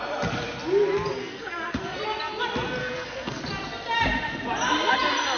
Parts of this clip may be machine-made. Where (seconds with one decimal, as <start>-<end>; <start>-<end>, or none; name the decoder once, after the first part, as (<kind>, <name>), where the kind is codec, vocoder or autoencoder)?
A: 1.2-2.0 (codec, SNAC); 2.8-3.4